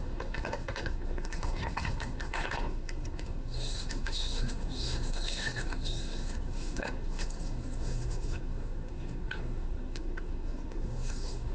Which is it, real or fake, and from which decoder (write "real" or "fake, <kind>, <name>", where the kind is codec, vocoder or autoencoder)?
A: fake, codec, SNAC